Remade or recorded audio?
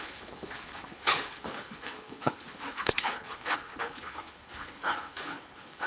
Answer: remade